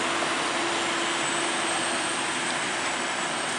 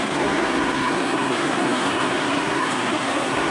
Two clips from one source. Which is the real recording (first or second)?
first